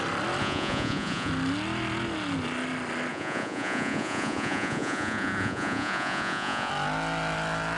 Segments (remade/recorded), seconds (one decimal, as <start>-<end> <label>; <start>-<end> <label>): 0.0-0.4 recorded; 0.4-1.3 remade; 1.3-3.1 recorded; 3.1-6.7 remade; 6.7-7.8 recorded